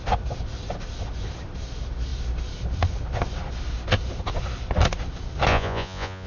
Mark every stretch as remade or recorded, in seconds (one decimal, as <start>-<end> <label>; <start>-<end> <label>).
0.0-5.5 recorded; 5.5-6.3 remade